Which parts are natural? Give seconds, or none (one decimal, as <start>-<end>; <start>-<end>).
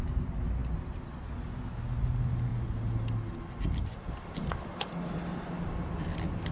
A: 0.0-6.5